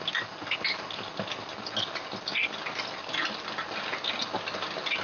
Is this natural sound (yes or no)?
yes